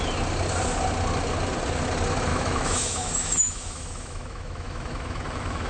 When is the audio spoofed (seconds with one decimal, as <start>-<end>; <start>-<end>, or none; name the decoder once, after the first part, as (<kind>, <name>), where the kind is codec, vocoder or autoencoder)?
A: 2.3-5.7 (autoencoder, DAC-VAE)